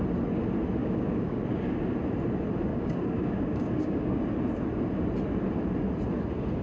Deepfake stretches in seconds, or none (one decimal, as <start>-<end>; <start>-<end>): 0.8-1.4; 2.7-4.2